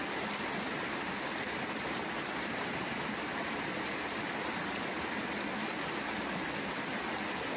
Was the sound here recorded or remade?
recorded